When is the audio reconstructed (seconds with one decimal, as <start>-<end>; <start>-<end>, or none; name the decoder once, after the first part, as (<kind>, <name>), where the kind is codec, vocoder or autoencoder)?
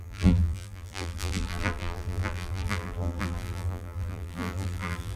0.0-5.2 (vocoder, BigVGAN v2)